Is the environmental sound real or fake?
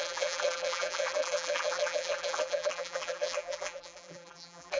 fake